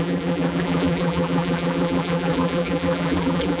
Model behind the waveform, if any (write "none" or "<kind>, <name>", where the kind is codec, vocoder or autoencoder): vocoder, BigVGAN v2